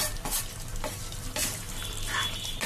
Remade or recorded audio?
remade